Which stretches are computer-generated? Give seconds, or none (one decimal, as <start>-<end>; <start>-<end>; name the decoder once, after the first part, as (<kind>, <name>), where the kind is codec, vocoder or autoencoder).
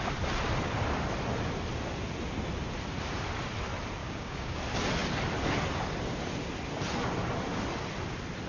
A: 4.0-4.6 (codec, DAC)